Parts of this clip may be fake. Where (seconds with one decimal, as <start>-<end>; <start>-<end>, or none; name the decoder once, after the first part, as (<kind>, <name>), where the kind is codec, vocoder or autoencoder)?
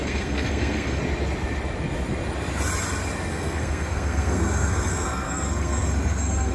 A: 0.0-1.0 (codec, SNAC); 3.3-6.5